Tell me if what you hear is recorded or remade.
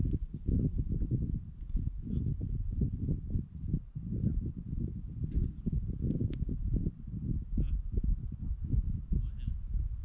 recorded